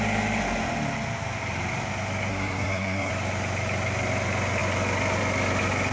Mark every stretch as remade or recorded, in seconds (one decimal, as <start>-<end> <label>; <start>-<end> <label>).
0.0-2.3 recorded; 2.3-3.1 remade; 3.1-5.9 recorded